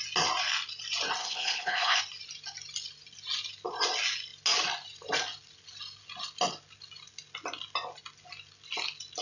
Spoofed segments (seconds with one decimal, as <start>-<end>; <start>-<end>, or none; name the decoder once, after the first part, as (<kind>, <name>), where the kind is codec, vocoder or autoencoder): 1.2-2.0 (codec, HILCodec)